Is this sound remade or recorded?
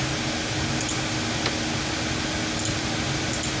recorded